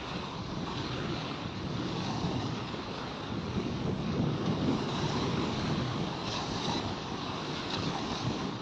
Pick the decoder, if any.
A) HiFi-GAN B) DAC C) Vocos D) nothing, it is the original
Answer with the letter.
B